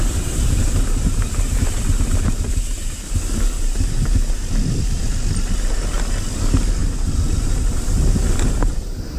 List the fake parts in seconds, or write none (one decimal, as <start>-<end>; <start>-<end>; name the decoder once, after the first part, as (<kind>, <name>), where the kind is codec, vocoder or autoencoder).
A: none